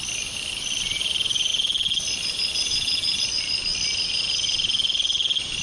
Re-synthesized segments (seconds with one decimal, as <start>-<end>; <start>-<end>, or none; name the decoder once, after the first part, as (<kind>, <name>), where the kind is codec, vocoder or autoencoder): none